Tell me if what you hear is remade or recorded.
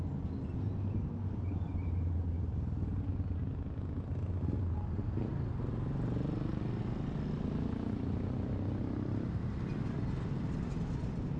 recorded